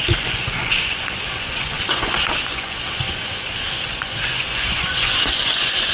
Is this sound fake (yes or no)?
yes